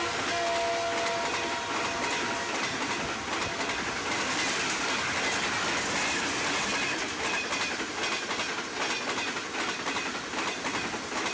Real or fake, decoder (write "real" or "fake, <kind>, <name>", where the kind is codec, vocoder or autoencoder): real